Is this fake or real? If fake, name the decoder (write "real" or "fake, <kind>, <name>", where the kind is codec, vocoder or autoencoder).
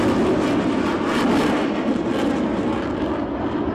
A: real